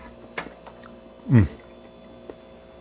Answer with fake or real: real